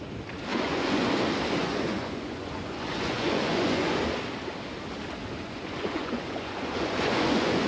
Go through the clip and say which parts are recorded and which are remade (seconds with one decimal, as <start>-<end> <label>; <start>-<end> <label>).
0.0-0.5 recorded; 0.5-1.1 remade; 1.1-1.6 recorded; 1.6-4.0 remade; 4.0-5.4 recorded; 5.4-7.7 remade